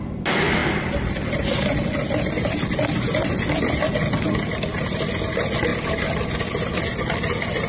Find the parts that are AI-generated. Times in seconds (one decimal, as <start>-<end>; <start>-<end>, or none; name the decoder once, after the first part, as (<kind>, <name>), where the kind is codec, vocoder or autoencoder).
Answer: none